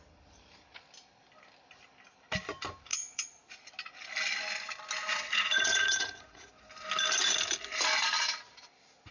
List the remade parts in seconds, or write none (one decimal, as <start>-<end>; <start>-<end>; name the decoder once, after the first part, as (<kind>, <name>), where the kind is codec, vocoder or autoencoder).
2.9-3.7 (vocoder, Vocos); 5.1-6.5